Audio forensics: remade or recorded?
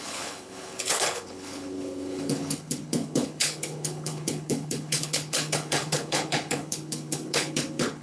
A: remade